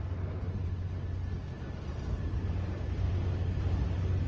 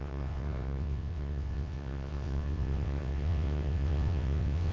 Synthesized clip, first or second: second